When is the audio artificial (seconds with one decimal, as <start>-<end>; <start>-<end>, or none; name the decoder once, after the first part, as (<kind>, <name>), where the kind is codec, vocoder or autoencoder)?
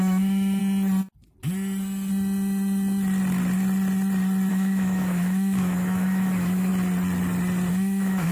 0.0-0.6 (autoencoder, DAC-VAE); 4.5-6.7; 7.7-8.3